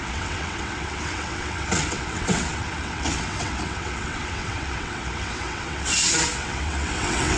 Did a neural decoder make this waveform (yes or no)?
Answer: yes